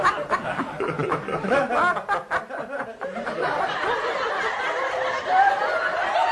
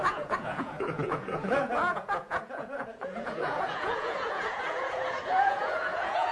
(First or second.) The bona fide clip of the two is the first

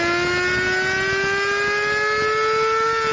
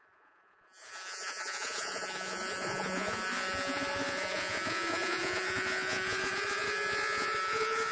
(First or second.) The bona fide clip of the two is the first